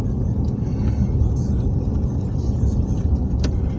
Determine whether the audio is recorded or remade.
recorded